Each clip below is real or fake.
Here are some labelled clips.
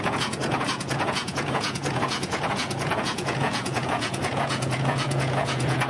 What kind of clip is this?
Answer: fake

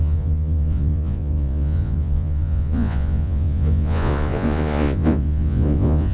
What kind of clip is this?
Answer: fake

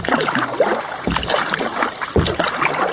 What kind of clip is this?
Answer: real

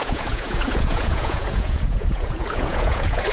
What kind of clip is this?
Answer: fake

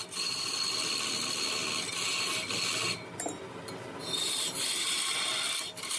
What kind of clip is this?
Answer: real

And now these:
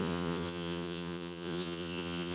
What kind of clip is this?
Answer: fake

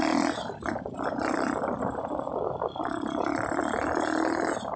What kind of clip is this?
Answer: real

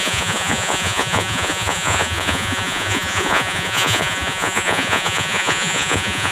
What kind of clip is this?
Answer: fake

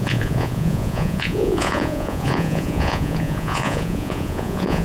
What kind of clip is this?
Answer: fake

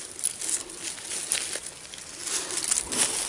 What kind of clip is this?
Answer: real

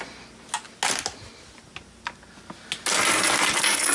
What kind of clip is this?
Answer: real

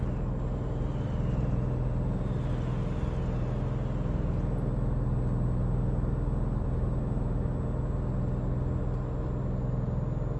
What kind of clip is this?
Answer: real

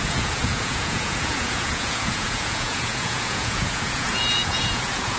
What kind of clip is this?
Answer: fake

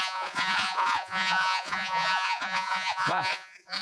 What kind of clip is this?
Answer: fake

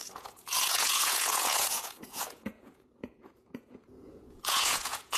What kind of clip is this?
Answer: fake